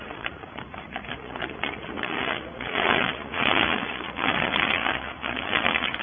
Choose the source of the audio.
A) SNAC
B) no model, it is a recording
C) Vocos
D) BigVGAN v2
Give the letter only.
C